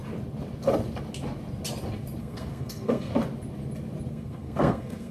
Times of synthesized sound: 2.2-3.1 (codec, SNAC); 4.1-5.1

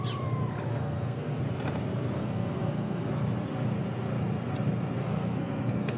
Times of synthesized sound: 0.7-1.4 (codec, SNAC); 2.2-3.1; 5.0-6.0

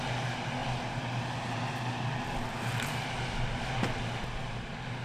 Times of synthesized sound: none

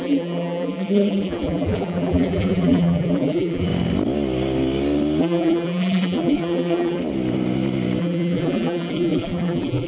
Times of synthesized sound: 0.0-3.7 (vocoder, BigVGAN v2); 5.2-7.0; 8.0-9.9

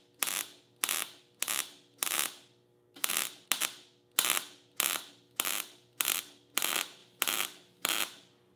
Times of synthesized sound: none